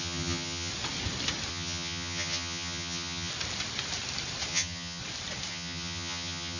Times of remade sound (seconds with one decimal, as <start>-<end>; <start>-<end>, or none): 0.0-0.7; 1.5-3.3; 4.5-5.0; 5.5-6.6